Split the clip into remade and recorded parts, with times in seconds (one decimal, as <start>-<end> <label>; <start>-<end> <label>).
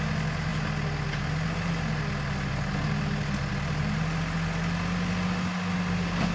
0.0-6.3 recorded